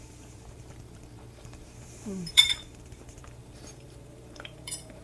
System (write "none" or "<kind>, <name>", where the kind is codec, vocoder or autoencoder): vocoder, BigVGAN v2